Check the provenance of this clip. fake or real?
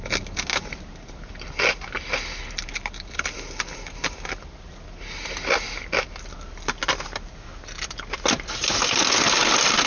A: real